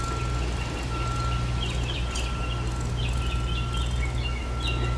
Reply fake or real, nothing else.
real